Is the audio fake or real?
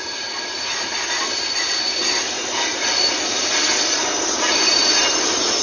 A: real